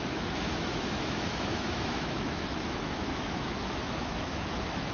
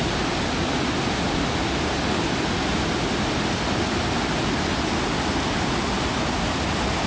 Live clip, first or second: second